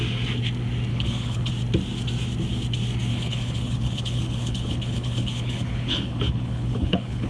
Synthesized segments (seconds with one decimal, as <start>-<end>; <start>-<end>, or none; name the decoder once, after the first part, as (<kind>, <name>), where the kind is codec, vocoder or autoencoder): 0.9-1.5 (codec, HILCodec); 3.1-7.3